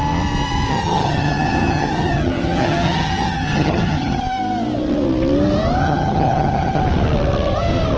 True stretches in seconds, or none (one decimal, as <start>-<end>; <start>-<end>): 0.0-0.7; 4.2-5.8; 6.8-8.0